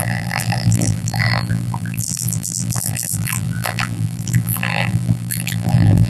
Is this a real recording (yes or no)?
no